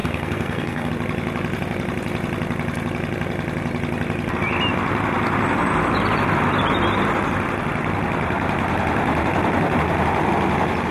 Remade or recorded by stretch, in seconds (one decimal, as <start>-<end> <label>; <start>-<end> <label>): 0.0-0.9 remade; 0.9-10.9 recorded